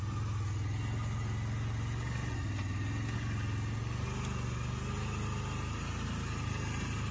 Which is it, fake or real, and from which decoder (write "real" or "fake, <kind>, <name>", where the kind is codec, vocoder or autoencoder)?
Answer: real